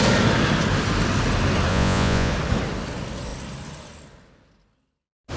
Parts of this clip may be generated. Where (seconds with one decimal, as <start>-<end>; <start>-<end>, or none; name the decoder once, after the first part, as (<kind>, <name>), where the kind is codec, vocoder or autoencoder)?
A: 1.7-2.3 (vocoder, Vocos)